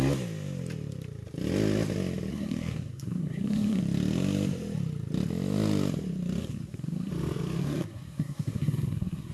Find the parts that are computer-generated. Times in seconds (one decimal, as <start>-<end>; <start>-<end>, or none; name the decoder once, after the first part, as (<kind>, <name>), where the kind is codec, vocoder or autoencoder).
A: 2.3-3.8 (codec, SNAC); 6.4-7.1; 7.6-9.3